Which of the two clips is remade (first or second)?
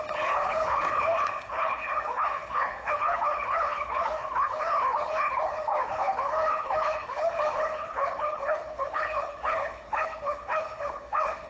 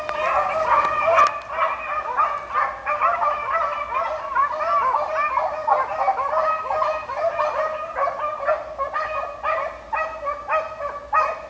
first